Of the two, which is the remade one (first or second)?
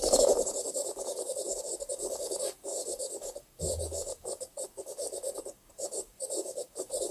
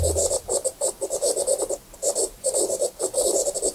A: first